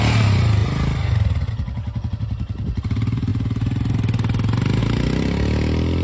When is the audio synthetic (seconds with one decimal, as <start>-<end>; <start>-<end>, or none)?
none